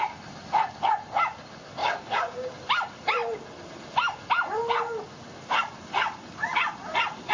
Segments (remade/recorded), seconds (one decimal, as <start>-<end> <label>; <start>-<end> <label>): 0.0-1.8 recorded; 1.8-2.5 remade; 2.5-7.3 recorded

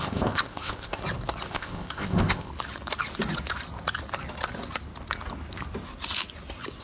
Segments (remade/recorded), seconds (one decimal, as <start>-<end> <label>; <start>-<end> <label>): 0.0-1.0 remade; 1.0-1.5 recorded; 1.5-2.5 remade; 2.5-6.8 recorded

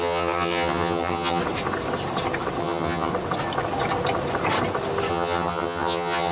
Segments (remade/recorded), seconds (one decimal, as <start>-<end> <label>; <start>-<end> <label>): 0.0-1.4 remade; 1.4-2.6 recorded; 2.6-3.1 remade; 3.1-5.1 recorded; 5.1-6.3 remade

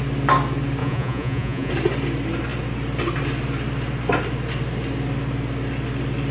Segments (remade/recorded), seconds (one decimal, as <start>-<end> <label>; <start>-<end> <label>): 0.0-0.8 recorded; 0.8-1.7 remade; 1.7-6.3 recorded

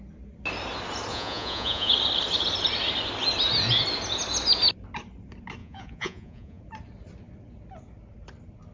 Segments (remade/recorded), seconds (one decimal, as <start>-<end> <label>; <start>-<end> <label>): 0.0-1.1 recorded; 1.1-1.9 remade; 1.9-5.6 recorded; 5.6-6.6 remade; 6.6-8.7 recorded

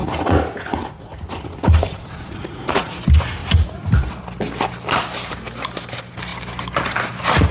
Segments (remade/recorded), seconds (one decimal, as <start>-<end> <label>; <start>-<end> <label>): 0.0-3.0 remade; 3.0-3.4 recorded; 3.4-4.1 remade; 4.1-7.5 recorded